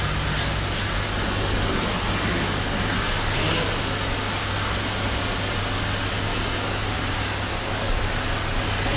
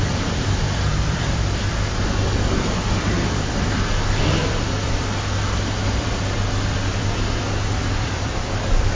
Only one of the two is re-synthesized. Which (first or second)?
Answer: second